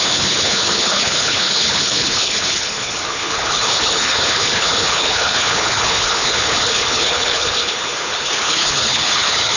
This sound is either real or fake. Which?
fake